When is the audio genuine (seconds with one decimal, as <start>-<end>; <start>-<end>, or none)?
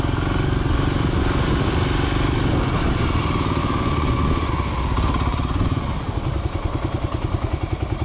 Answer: 0.0-3.6; 4.5-5.3; 5.8-8.0